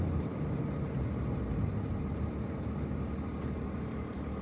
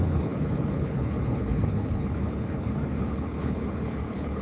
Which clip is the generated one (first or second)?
second